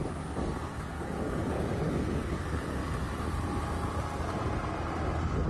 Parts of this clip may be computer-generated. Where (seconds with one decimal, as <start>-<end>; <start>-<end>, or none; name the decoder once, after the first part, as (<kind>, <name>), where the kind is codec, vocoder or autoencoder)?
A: 0.0-2.8 (codec, DAC)

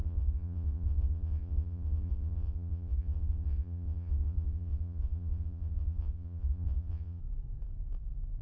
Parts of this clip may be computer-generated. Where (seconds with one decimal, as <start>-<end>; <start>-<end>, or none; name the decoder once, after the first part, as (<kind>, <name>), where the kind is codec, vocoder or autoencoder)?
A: 0.0-7.2 (vocoder, Vocos)